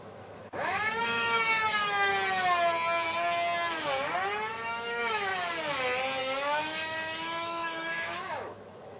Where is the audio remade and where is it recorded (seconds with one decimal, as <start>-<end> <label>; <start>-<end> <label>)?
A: 0.0-2.1 remade; 2.1-4.5 recorded; 4.5-5.3 remade; 5.3-6.2 recorded; 6.2-9.0 remade